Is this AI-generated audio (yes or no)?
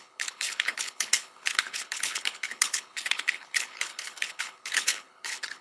yes